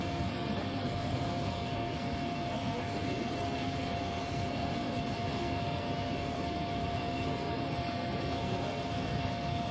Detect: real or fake fake